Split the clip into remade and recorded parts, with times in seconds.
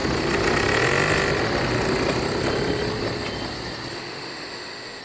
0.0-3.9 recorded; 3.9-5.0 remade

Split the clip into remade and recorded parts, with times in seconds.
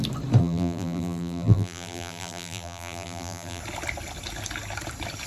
0.0-0.4 recorded; 0.4-3.6 remade; 3.6-5.3 recorded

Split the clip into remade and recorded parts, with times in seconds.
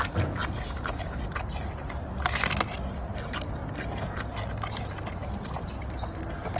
0.0-6.6 recorded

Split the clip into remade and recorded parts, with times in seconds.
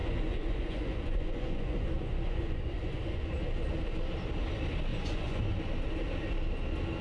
0.0-3.3 remade; 3.3-4.9 recorded; 4.9-5.4 remade; 5.4-7.0 recorded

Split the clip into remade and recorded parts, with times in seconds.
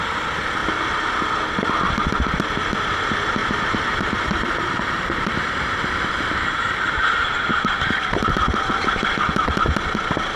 0.0-0.6 recorded; 0.6-1.3 remade; 1.3-3.4 recorded; 3.4-7.6 remade; 7.6-10.4 recorded